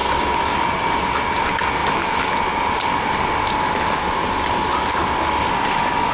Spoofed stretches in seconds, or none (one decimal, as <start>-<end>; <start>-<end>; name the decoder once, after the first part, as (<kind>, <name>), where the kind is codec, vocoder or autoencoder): 0.0-1.1 (vocoder, BigVGAN v2); 1.8-5.5